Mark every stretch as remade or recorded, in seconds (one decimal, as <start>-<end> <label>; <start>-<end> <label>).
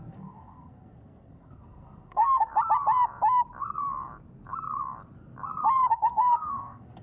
0.0-2.5 remade; 2.5-5.9 recorded; 5.9-7.0 remade